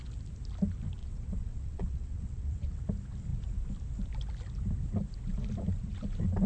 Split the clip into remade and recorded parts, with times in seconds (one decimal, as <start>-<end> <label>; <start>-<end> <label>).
0.0-1.0 recorded; 1.0-2.8 remade; 2.8-6.5 recorded